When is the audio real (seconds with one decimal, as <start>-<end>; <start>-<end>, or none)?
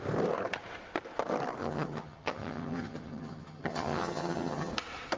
0.0-1.6; 4.7-5.2